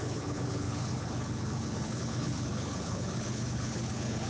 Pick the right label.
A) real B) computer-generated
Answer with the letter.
B